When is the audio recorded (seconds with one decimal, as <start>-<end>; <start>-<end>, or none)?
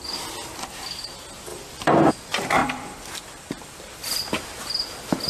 0.0-1.5; 2.1-2.6; 4.2-5.3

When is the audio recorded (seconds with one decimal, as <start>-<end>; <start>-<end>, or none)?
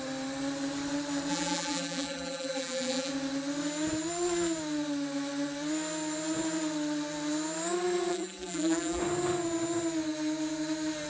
0.0-1.3; 3.1-8.1; 9.0-11.1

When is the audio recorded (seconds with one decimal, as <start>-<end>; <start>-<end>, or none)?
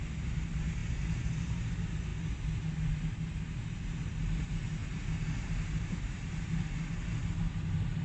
0.0-0.8; 1.4-4.8; 6.7-8.0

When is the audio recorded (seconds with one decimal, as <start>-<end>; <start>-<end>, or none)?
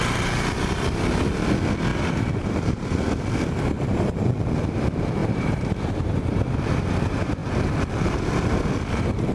0.0-5.2; 6.4-9.3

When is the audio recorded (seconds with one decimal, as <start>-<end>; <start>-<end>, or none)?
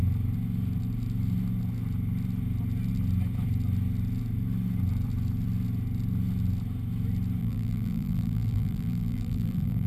0.0-7.4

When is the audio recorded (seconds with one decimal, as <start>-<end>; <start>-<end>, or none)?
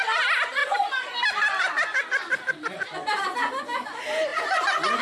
0.0-5.0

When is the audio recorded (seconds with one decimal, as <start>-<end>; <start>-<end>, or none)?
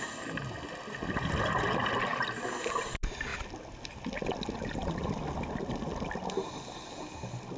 0.0-2.1; 2.7-7.6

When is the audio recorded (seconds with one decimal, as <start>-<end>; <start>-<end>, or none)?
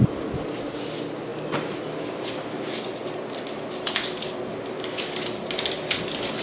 0.0-6.4